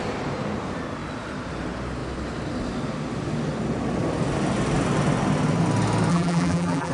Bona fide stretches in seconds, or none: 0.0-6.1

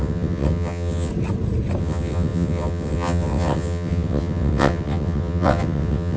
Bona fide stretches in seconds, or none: 1.1-1.8

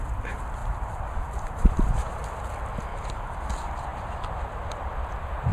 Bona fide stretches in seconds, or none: 0.0-0.6; 2.3-2.9; 3.4-5.5